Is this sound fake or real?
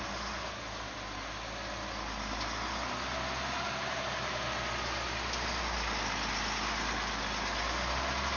real